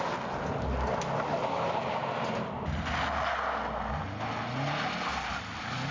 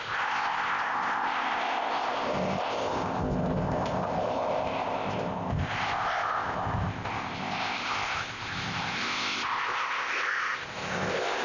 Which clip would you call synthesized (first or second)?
second